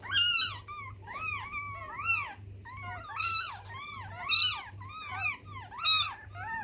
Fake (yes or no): no